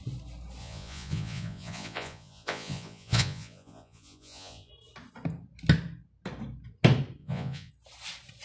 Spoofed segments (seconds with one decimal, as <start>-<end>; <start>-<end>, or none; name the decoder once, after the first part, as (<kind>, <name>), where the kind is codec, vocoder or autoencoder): 0.6-4.7 (vocoder, Vocos); 7.2-7.7